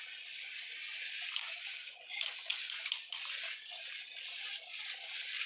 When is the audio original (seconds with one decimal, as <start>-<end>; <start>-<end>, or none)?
0.0-1.4; 2.0-5.5